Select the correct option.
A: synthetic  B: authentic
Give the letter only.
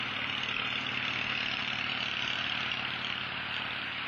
A